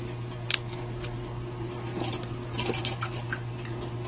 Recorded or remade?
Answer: recorded